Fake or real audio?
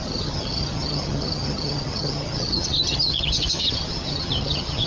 fake